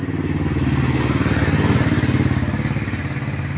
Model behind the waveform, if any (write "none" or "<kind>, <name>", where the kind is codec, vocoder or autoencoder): none